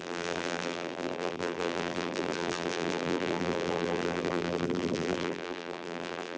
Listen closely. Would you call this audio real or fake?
fake